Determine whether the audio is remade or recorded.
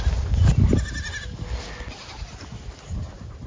recorded